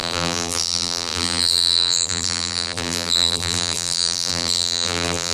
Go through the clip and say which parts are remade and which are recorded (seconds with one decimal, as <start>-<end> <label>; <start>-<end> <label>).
0.0-5.3 remade